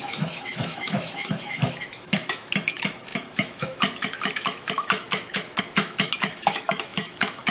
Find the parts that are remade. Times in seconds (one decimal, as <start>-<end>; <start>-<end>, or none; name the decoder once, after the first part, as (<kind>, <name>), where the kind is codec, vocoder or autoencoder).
0.0-7.5 (autoencoder, DAC-VAE)